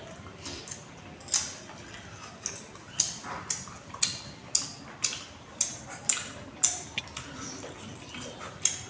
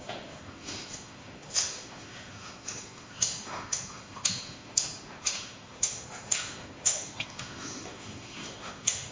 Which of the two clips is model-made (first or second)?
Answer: second